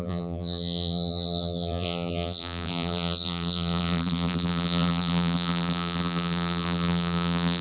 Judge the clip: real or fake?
fake